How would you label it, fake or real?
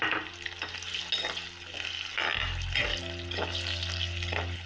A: real